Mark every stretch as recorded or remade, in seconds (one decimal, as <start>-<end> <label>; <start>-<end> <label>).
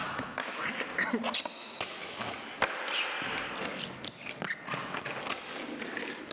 0.0-0.6 remade; 0.6-1.6 recorded; 1.6-2.3 remade; 2.3-6.3 recorded